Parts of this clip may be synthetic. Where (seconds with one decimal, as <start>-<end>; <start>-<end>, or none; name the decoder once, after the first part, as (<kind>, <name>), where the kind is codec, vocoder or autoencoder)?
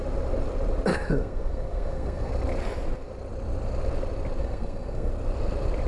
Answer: 0.9-2.3 (codec, SNAC); 4.4-5.1